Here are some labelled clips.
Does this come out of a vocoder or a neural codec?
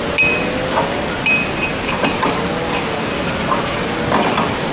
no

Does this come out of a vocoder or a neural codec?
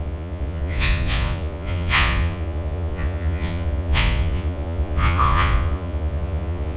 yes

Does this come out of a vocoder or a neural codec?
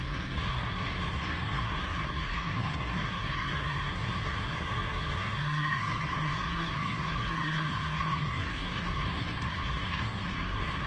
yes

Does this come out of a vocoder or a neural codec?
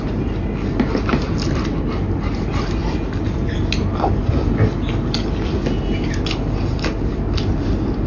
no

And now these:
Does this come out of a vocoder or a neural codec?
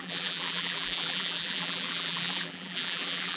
yes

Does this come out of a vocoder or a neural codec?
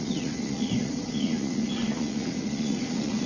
yes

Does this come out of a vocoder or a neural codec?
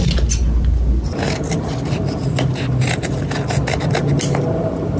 no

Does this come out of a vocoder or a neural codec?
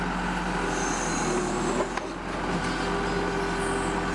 no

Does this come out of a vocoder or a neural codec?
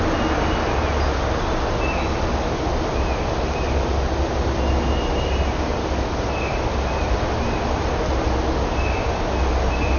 no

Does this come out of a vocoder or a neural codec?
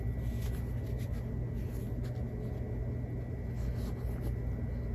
no